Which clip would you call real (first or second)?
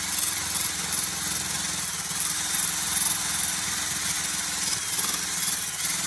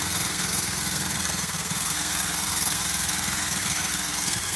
first